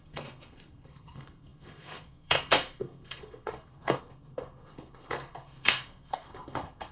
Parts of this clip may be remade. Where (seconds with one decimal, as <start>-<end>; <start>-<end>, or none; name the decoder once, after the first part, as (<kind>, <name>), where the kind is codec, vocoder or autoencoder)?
0.0-6.9 (codec, SNAC)